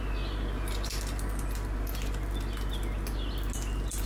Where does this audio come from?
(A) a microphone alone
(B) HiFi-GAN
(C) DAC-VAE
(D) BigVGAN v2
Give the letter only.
A